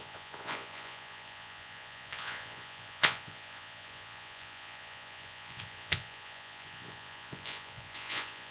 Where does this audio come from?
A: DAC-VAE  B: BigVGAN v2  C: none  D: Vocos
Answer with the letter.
D